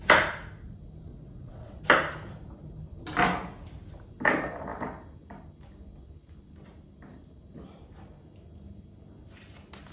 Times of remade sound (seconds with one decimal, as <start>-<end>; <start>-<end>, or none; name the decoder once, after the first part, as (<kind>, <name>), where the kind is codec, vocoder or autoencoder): 1.1-1.8 (vocoder, WaveNeXt)